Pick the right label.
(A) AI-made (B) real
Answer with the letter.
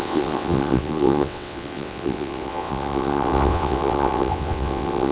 A